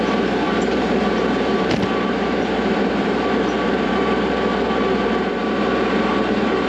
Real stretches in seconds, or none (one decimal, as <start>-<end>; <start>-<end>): none